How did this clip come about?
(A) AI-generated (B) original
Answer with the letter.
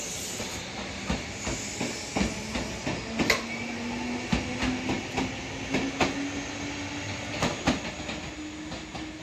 B